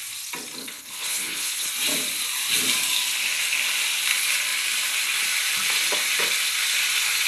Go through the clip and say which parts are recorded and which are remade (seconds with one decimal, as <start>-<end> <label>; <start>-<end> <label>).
0.0-0.6 recorded; 0.6-1.7 remade; 1.7-7.3 recorded

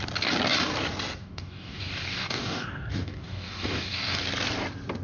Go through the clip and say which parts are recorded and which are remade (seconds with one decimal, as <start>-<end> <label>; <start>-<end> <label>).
0.0-1.2 recorded; 1.2-4.2 remade; 4.2-5.0 recorded

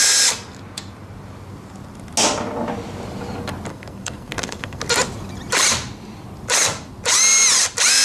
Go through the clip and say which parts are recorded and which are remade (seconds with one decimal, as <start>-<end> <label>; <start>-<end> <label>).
0.0-3.7 recorded; 3.7-4.8 remade; 4.8-8.0 recorded

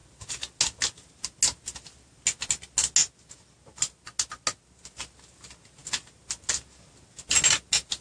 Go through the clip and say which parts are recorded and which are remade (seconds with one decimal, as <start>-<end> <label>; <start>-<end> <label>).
0.0-8.0 recorded

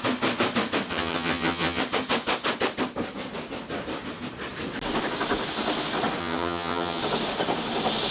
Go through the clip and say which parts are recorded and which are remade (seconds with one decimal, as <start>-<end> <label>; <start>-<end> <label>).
0.0-0.9 recorded; 0.9-1.8 remade; 1.8-6.2 recorded; 6.2-7.0 remade; 7.0-8.1 recorded

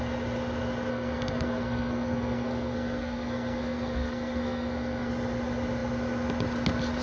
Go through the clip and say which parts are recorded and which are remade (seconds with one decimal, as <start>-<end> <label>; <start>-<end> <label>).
0.0-0.9 recorded; 0.9-5.1 remade; 5.1-7.0 recorded